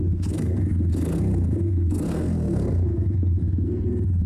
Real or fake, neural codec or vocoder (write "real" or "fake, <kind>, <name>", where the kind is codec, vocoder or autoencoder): fake, codec, SNAC